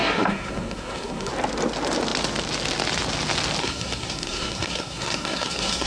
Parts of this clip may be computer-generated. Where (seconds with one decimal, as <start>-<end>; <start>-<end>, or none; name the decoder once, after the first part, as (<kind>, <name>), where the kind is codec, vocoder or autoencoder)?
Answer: 0.0-1.3 (codec, SNAC); 3.6-5.9